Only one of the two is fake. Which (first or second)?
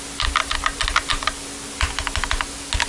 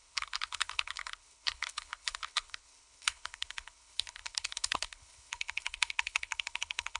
second